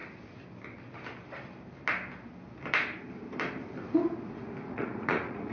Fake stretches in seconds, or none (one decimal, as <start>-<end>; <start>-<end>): 4.6-5.5